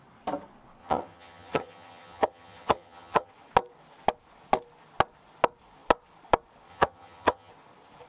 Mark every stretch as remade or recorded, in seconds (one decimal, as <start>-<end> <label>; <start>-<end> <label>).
0.0-0.8 recorded; 0.8-3.3 remade; 3.3-6.7 recorded; 6.7-7.5 remade; 7.5-8.1 recorded